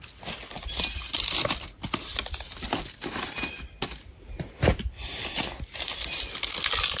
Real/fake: real